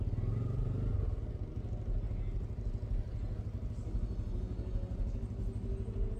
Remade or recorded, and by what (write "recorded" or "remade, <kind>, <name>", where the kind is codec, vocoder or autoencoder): recorded